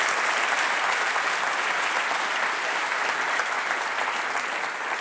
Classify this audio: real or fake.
real